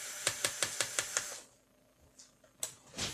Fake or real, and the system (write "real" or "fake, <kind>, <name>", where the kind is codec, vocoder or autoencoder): real